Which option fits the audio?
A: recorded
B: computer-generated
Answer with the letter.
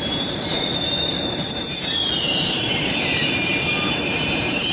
B